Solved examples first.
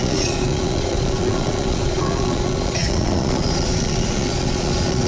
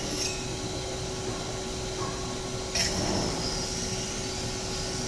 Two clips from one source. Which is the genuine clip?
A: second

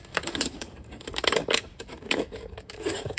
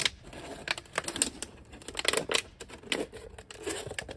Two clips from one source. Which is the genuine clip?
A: second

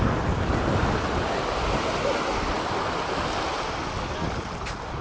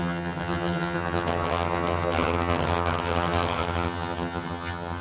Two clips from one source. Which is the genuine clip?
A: first